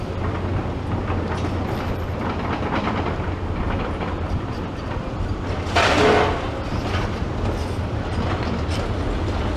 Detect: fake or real real